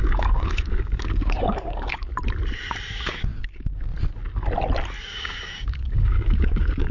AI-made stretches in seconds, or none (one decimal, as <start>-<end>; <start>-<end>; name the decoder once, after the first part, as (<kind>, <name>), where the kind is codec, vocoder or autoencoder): 0.0-2.1 (codec, DAC); 2.9-3.9; 5.0-6.9